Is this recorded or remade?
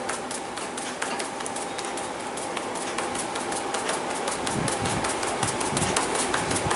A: recorded